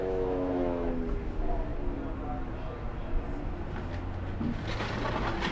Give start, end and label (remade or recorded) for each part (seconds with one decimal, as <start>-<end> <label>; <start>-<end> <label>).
0.0-0.9 remade; 0.9-5.5 recorded